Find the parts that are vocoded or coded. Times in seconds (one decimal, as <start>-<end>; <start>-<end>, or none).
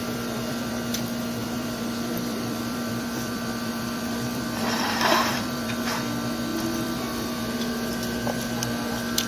0.0-0.9; 1.4-5.7; 6.5-7.7